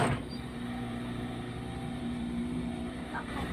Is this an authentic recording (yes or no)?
no